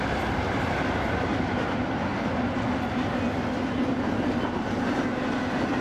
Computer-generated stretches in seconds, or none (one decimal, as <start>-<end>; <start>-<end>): none